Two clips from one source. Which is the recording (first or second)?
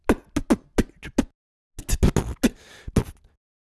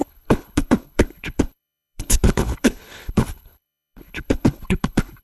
first